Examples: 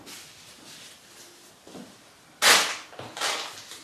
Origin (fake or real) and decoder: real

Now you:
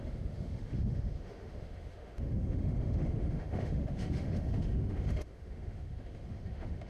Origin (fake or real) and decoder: fake, autoencoder, DAC-VAE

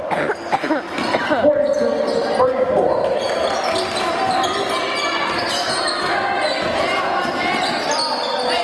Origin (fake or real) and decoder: real